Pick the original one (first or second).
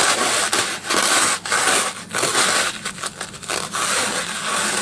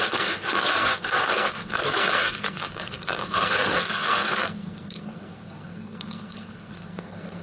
first